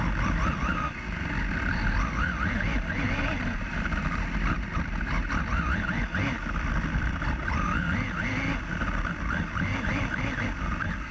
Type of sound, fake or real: real